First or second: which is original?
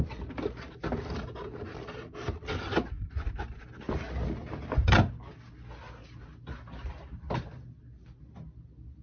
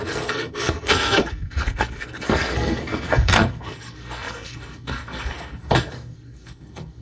first